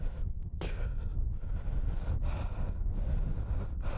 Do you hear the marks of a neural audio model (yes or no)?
no